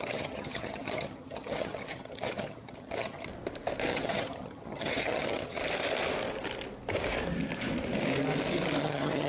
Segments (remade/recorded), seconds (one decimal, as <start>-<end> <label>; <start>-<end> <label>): 0.0-3.3 remade; 3.3-3.9 recorded; 3.9-5.6 remade; 5.6-8.8 recorded; 8.8-9.3 remade